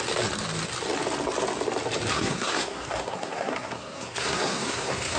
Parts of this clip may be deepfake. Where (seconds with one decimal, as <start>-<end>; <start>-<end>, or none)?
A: 2.1-5.2